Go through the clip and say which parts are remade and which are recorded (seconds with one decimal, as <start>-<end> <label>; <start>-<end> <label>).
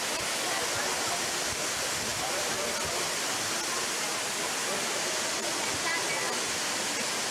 0.0-7.3 recorded